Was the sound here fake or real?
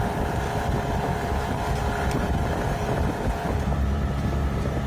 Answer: fake